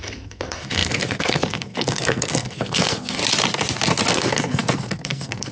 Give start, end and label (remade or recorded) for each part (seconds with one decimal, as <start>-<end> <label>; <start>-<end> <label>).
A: 0.0-3.2 remade; 3.2-4.1 recorded; 4.1-5.5 remade